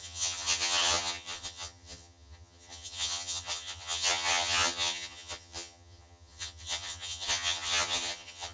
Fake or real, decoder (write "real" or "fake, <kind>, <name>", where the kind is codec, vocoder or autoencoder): fake, vocoder, HiFi-GAN